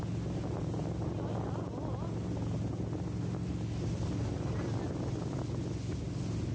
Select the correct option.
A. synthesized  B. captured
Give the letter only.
B